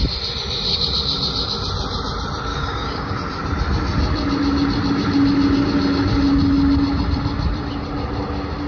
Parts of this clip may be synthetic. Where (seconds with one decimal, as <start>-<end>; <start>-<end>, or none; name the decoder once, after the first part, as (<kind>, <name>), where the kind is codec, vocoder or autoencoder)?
2.5-3.1 (codec, DAC)